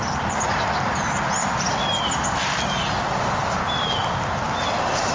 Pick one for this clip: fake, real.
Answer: real